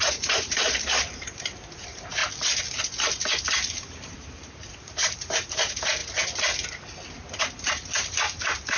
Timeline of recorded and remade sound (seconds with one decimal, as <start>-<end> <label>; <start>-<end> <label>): 0.0-2.2 remade; 2.2-3.4 recorded; 3.4-6.0 remade; 6.0-7.4 recorded; 7.4-8.8 remade